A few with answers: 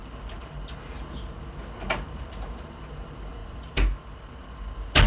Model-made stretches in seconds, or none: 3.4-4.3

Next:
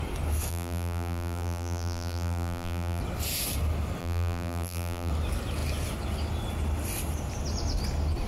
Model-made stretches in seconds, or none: 0.5-3.0; 4.0-5.1